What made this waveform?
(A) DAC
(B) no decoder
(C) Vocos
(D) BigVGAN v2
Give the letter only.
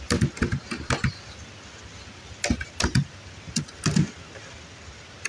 B